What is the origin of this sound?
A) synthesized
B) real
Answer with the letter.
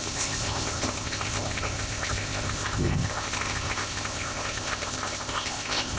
A